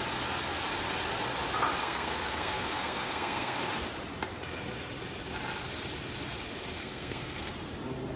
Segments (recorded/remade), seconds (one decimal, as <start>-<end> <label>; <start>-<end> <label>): 0.0-1.8 recorded; 1.8-3.7 remade; 3.7-6.8 recorded; 6.8-7.5 remade; 7.5-8.2 recorded